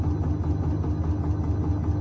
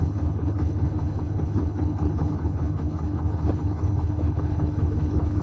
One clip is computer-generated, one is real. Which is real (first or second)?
first